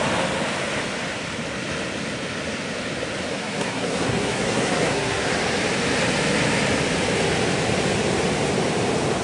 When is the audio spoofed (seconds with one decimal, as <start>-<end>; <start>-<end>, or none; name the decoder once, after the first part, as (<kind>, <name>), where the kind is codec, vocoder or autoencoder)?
3.3-5.3 (codec, SNAC)